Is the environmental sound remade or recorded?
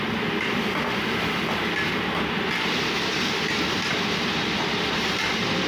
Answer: remade